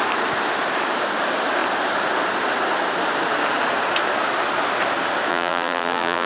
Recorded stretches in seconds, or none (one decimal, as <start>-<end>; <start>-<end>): 0.0-5.3